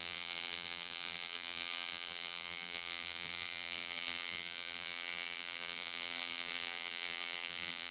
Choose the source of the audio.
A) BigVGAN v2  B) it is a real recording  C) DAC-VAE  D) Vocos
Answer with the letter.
A